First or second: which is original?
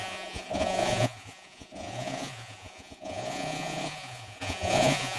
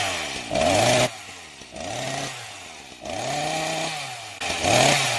second